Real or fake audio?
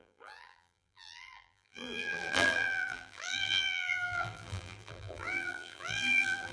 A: fake